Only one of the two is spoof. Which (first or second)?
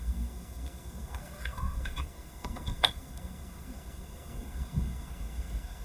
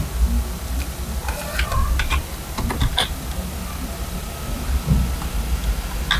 first